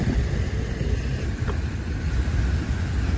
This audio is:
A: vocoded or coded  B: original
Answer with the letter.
B